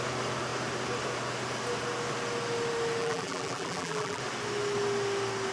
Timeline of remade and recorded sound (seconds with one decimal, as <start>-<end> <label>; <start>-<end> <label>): 0.0-3.0 recorded; 3.0-4.2 remade; 4.2-5.5 recorded